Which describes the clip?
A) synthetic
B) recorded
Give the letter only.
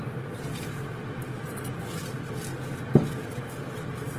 B